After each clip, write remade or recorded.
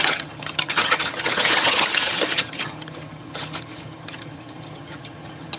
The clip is remade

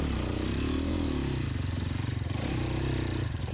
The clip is remade